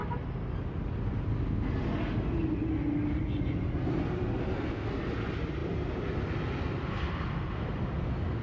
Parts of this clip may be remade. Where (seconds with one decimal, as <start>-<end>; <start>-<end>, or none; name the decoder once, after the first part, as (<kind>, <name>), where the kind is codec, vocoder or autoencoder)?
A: none